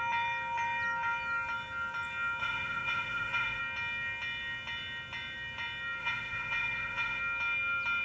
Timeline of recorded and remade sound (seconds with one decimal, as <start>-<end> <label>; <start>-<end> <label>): 0.0-2.4 recorded; 2.4-3.6 remade; 3.6-6.0 recorded; 6.0-7.2 remade; 7.2-8.0 recorded